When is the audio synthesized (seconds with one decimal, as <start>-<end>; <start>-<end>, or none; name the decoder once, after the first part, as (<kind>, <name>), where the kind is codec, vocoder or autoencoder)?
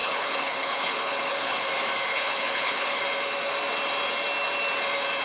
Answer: 0.0-1.7 (codec, HILCodec); 2.1-3.0